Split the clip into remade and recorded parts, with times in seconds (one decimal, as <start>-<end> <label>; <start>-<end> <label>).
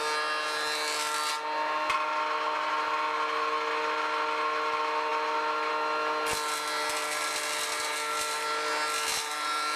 0.0-9.8 recorded